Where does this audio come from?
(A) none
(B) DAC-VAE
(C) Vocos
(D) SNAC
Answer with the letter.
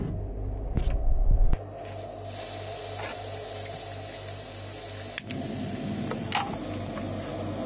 A